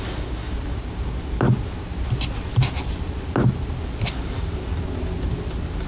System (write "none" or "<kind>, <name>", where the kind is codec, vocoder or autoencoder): none